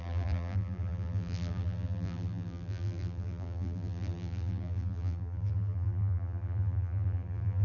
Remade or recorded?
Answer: remade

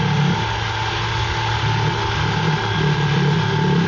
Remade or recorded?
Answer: recorded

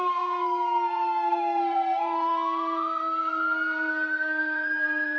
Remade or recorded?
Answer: remade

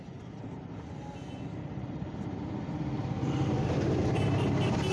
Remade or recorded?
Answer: recorded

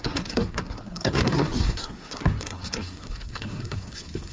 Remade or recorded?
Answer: remade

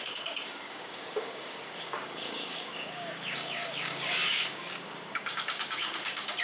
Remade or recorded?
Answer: remade